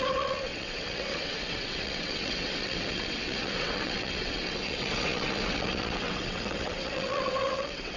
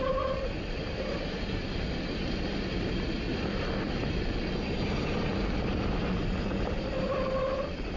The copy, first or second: first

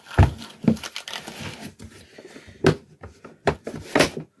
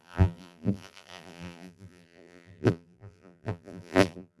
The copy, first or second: second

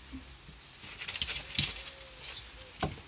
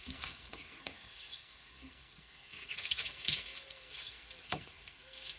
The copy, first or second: second